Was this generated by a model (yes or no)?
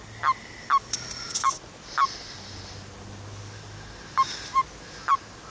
no